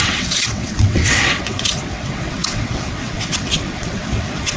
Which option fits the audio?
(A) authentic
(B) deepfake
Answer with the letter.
B